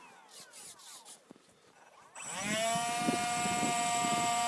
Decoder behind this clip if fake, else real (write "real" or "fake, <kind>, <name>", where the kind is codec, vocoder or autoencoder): fake, vocoder, BigVGAN v2